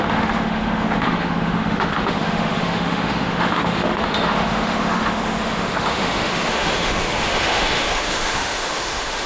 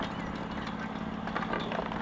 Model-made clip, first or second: first